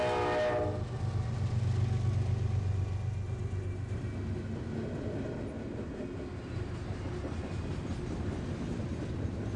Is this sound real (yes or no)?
yes